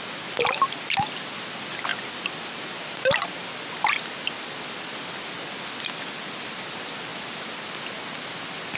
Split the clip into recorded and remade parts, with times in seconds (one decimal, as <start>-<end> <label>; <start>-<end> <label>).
0.0-8.8 recorded